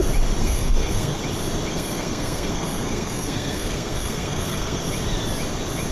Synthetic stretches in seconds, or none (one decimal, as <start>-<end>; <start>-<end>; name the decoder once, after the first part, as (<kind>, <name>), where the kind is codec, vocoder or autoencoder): 0.4-1.2 (codec, SNAC); 1.7-4.8